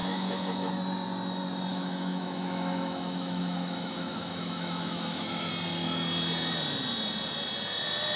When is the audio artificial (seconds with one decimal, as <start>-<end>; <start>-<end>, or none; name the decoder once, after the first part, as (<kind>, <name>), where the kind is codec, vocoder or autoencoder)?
0.0-0.7 (autoencoder, DAC-VAE); 1.7-5.5